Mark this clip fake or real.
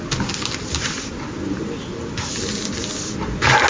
real